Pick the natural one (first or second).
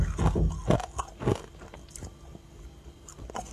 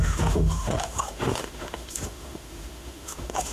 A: first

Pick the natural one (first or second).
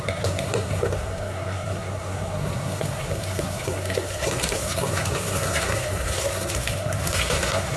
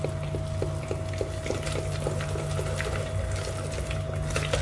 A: second